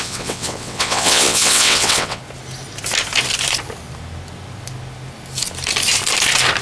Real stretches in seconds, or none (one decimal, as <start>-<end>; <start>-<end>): 2.2-6.6